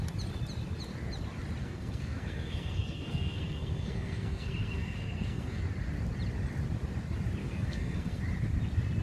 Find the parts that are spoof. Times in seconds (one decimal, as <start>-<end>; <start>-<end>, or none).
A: 1.6-5.6; 7.4-8.2